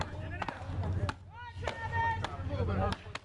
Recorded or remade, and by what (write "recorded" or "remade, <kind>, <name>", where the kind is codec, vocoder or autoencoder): recorded